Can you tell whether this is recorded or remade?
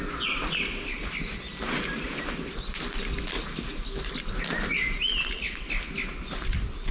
recorded